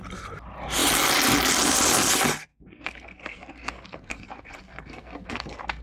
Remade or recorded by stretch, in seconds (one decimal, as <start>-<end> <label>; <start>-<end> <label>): 0.0-2.5 recorded; 2.5-5.8 remade